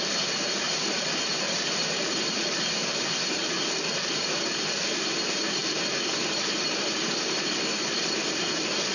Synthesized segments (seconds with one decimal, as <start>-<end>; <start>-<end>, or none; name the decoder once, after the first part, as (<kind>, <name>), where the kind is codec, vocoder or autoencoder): 0.0-3.4 (vocoder, BigVGAN v2); 4.1-5.6; 6.1-8.9